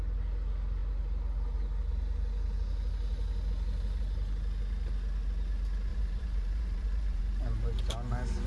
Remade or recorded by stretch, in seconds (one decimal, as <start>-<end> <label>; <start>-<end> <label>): 0.0-5.9 recorded; 5.9-7.2 remade; 7.2-8.5 recorded